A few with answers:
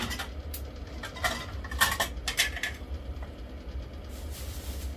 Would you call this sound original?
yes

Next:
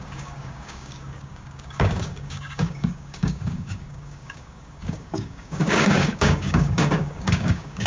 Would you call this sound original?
no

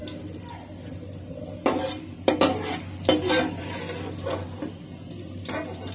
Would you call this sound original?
yes